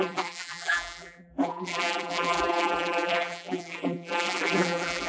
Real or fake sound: fake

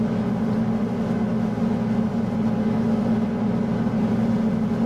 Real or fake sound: real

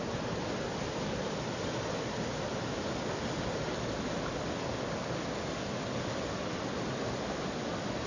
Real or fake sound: real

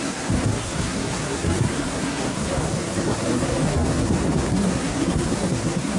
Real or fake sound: fake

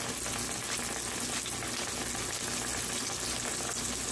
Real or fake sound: real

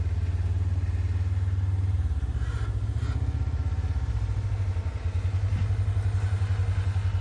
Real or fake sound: real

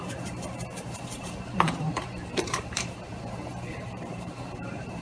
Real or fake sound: fake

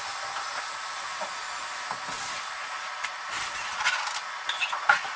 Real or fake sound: real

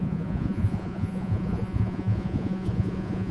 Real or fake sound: fake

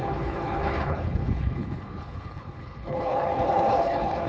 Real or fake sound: fake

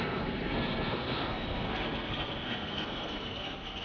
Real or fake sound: fake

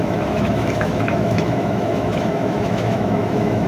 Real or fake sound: fake